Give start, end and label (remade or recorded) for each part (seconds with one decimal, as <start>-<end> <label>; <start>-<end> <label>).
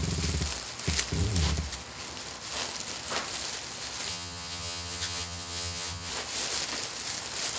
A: 0.0-4.1 recorded; 4.1-6.1 remade; 6.1-7.6 recorded